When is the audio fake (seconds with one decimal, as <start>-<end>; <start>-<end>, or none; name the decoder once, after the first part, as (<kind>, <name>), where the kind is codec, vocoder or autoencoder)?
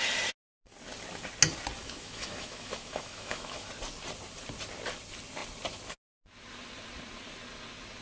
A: 1.8-3.7 (autoencoder, DAC-VAE)